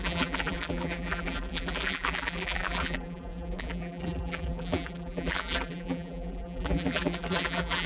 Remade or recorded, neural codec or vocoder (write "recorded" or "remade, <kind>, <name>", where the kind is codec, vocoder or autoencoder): remade, vocoder, BigVGAN v2